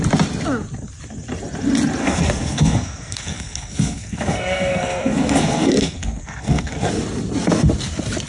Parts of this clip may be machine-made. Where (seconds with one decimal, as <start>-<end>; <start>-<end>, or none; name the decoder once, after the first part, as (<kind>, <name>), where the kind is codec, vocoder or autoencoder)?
2.0-6.9 (codec, SNAC)